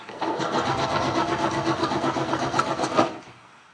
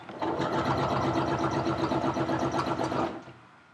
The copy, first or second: first